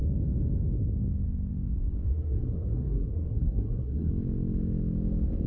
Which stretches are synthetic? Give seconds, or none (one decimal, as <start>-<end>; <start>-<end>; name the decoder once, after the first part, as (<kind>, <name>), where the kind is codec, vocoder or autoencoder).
2.1-4.1 (codec, SNAC)